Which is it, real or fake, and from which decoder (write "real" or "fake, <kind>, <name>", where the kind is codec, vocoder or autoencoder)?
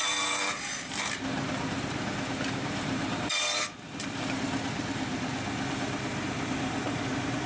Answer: fake, vocoder, BigVGAN v2